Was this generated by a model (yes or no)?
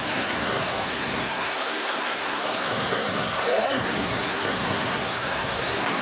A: yes